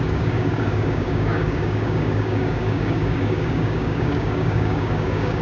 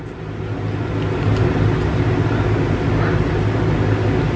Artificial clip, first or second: first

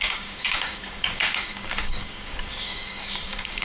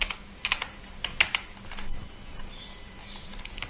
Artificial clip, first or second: first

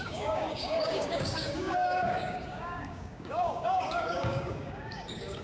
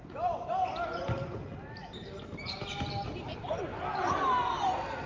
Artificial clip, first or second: first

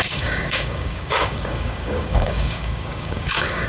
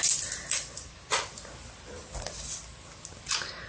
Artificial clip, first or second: first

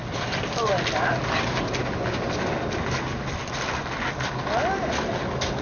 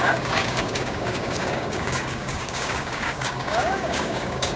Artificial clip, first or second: second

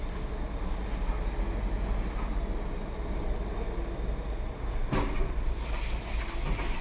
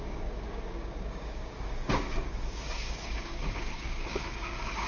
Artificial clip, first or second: second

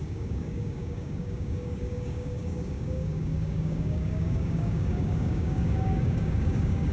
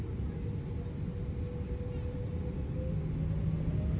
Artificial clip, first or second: first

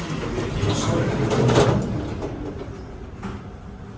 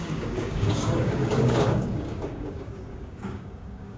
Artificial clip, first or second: second